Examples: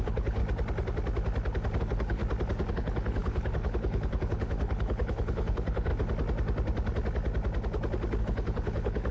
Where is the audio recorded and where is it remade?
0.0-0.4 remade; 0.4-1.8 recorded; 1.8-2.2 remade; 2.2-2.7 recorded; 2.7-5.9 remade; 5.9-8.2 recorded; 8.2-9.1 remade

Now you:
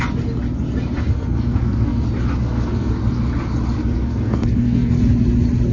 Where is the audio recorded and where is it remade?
0.0-1.1 recorded; 1.1-2.0 remade; 2.0-2.4 recorded; 2.4-2.9 remade; 2.9-3.8 recorded; 3.8-5.0 remade; 5.0-5.7 recorded

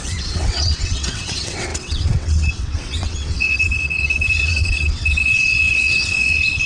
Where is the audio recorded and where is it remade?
0.0-6.7 remade

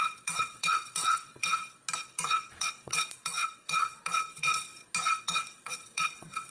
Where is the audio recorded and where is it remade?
0.0-1.6 remade; 1.6-2.2 recorded; 2.2-4.7 remade; 4.7-5.2 recorded; 5.2-6.5 remade

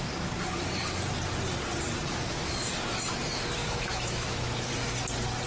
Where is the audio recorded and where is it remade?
0.0-2.1 recorded; 2.1-2.7 remade; 2.7-3.6 recorded; 3.6-4.7 remade; 4.7-5.5 recorded

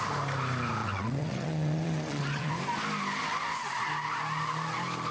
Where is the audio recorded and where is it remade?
0.0-0.8 recorded; 0.8-2.5 remade; 2.5-5.1 recorded

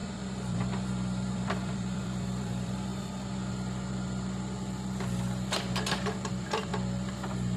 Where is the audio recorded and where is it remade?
0.0-2.9 remade; 2.9-6.3 recorded; 6.3-6.7 remade; 6.7-7.6 recorded